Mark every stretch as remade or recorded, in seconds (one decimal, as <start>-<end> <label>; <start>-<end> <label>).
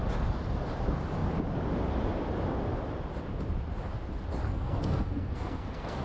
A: 0.0-4.5 recorded; 4.5-6.0 remade